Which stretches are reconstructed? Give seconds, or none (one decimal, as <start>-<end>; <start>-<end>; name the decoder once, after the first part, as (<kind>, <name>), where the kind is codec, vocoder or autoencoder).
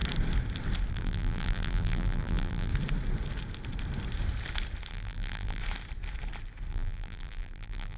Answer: 0.9-2.7 (vocoder, BigVGAN v2); 4.9-5.6; 6.7-8.0